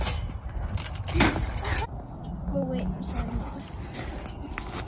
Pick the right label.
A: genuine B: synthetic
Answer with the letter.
A